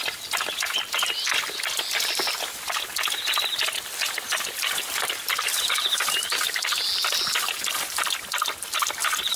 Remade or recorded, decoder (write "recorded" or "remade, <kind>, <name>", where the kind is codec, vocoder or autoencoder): recorded